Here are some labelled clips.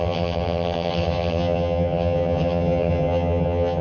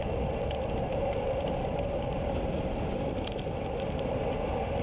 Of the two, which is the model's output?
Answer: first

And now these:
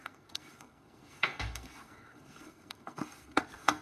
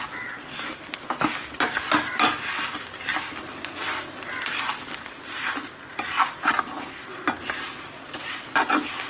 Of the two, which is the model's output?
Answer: first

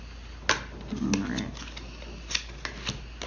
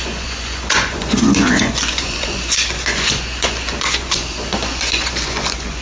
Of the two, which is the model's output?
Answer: second